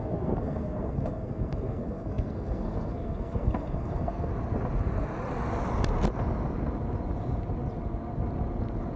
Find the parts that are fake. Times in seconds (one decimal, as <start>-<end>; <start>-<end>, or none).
0.0-4.3